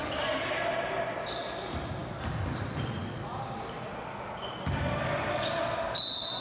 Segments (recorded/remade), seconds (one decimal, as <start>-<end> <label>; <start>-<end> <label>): 0.0-6.4 recorded